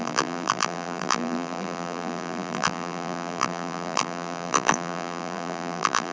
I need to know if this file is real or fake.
fake